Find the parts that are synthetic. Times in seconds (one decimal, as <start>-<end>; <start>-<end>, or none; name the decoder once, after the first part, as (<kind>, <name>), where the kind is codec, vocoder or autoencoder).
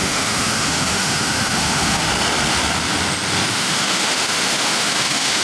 0.0-2.1 (autoencoder, DAC-VAE); 3.5-5.4